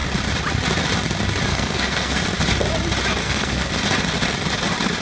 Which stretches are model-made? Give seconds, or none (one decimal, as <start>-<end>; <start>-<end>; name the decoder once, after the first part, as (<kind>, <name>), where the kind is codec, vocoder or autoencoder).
1.5-2.2 (codec, SNAC); 3.2-3.7